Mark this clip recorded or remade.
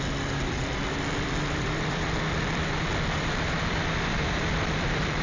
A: remade